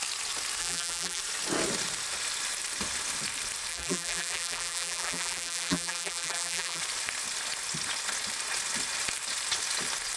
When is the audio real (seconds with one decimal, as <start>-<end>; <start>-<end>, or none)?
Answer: 0.0-0.6; 1.2-3.7; 6.8-10.2